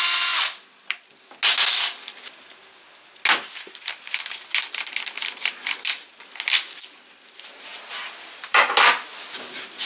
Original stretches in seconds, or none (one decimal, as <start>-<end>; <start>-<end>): 0.0-9.9